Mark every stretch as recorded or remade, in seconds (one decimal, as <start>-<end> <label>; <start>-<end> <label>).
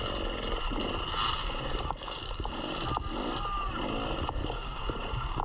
0.0-1.4 recorded; 1.4-2.7 remade; 2.7-4.4 recorded; 4.4-5.4 remade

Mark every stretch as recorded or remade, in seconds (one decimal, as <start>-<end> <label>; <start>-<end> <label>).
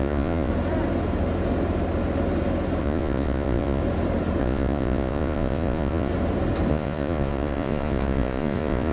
0.0-0.5 remade; 0.5-2.8 recorded; 2.8-3.8 remade; 3.8-4.4 recorded; 4.4-6.1 remade; 6.1-6.7 recorded; 6.7-8.9 remade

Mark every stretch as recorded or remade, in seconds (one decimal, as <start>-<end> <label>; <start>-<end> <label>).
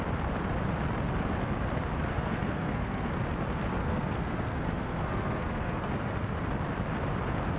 0.0-2.1 recorded; 2.1-3.1 remade; 3.1-3.8 recorded; 3.8-5.9 remade; 5.9-7.6 recorded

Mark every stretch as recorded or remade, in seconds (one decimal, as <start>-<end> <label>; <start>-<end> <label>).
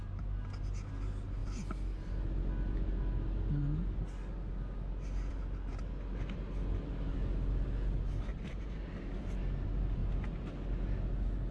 0.0-8.3 recorded; 8.3-9.2 remade; 9.2-11.5 recorded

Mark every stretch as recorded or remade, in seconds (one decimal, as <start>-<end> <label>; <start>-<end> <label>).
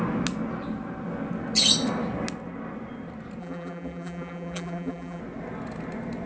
0.0-3.4 recorded; 3.4-5.2 remade; 5.2-6.3 recorded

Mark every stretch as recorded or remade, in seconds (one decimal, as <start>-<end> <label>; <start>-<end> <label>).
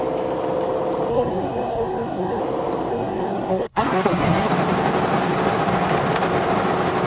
0.0-1.1 recorded; 1.1-2.4 remade; 2.4-2.9 recorded; 2.9-4.5 remade; 4.5-7.1 recorded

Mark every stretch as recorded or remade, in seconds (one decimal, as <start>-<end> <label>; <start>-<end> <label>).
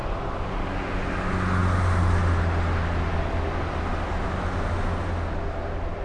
0.0-6.0 recorded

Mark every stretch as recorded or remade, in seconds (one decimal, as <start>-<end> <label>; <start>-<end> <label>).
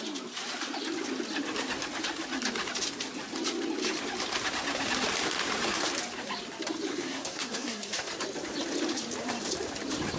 0.0-6.9 recorded; 6.9-7.9 remade; 7.9-10.2 recorded